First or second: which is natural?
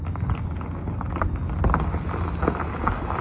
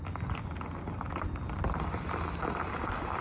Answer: first